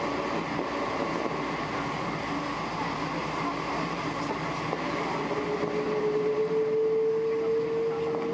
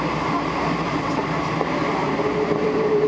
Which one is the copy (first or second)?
second